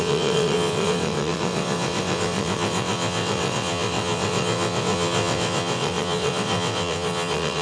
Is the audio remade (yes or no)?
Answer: yes